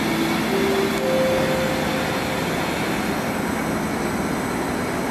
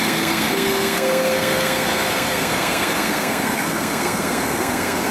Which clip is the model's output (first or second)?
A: second